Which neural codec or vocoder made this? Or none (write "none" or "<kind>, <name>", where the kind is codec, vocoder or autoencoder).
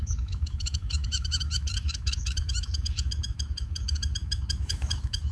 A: autoencoder, DAC-VAE